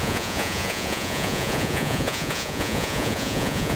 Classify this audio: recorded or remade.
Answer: remade